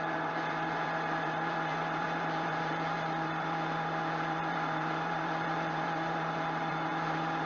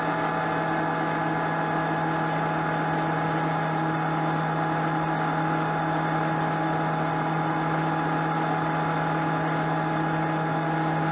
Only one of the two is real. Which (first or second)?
second